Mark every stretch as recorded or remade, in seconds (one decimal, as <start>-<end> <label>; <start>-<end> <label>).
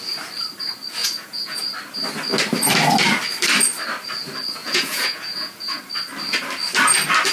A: 0.0-1.0 recorded; 1.0-1.6 remade; 1.6-4.6 recorded; 4.6-5.8 remade; 5.8-7.3 recorded